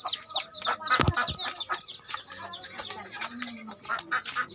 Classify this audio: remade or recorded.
recorded